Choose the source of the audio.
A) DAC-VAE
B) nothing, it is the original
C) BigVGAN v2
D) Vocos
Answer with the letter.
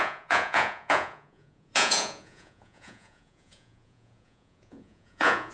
D